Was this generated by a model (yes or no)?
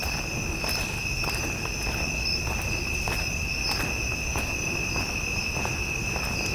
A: no